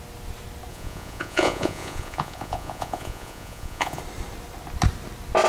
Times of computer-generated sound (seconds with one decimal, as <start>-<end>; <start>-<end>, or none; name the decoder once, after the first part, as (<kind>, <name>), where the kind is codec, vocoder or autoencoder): 0.7-4.0 (vocoder, Vocos)